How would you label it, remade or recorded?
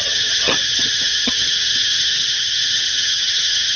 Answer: remade